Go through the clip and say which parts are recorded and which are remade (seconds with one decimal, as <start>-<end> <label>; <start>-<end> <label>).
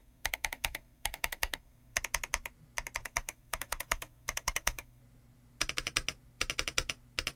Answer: 0.0-2.0 remade; 2.0-3.0 recorded; 3.0-5.0 remade; 5.0-7.4 recorded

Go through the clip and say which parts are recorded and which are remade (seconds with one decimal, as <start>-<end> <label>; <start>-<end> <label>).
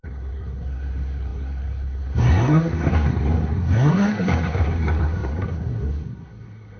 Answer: 0.0-6.8 remade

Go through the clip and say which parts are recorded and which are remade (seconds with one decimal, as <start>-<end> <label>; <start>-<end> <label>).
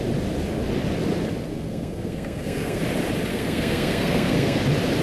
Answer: 0.0-1.5 recorded; 1.5-2.8 remade; 2.8-3.3 recorded; 3.3-4.6 remade; 4.6-5.0 recorded